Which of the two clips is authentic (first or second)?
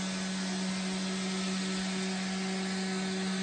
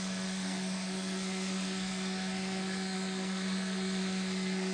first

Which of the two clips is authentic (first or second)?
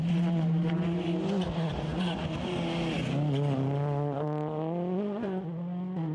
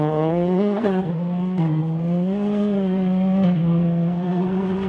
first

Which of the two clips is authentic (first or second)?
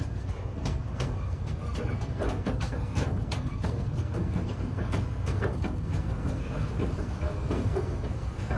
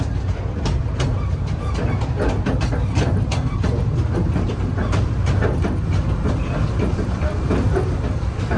second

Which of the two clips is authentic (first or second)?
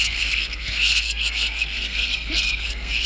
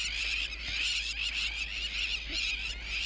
second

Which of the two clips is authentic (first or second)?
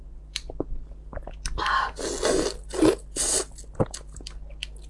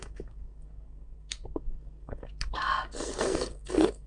first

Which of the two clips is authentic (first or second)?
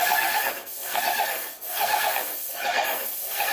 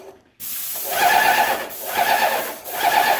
second